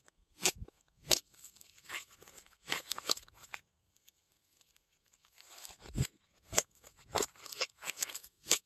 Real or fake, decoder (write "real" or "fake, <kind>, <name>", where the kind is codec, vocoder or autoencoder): fake, codec, SNAC